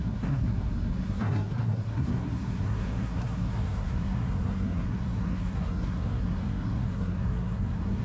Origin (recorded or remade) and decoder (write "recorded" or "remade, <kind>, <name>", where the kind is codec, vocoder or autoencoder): remade, codec, SNAC